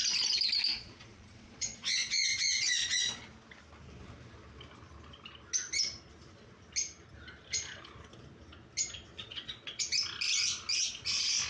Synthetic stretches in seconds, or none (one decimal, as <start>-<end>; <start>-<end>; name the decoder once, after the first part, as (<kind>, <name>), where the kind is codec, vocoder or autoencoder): 0.7-3.2 (vocoder, Vocos); 9.2-9.8